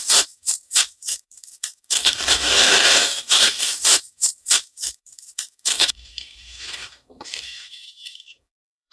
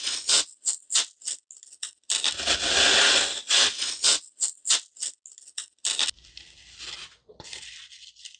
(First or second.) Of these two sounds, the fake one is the first